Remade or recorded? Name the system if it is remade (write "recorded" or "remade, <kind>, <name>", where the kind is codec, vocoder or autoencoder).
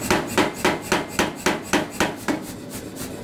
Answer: recorded